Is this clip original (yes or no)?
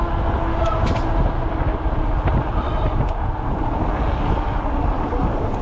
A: yes